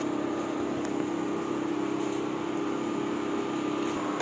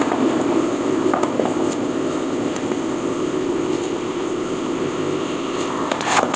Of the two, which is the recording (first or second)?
first